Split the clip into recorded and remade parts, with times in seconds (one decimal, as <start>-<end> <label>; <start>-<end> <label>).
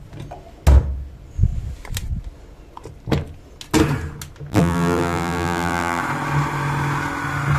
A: 0.0-4.5 recorded; 4.5-6.0 remade; 6.0-7.6 recorded